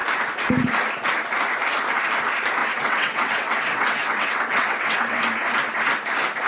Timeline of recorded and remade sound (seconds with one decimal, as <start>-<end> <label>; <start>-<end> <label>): 0.0-2.6 recorded; 2.6-5.2 remade; 5.2-6.5 recorded